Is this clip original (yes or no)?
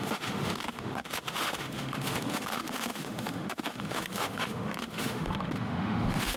no